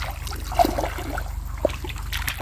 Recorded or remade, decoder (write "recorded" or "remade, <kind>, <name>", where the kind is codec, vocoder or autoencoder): recorded